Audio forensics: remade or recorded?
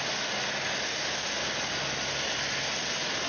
recorded